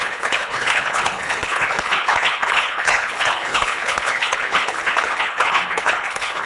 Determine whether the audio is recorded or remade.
remade